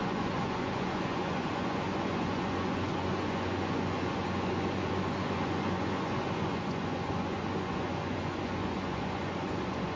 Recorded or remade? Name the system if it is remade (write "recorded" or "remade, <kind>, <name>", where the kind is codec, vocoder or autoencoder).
remade, vocoder, Vocos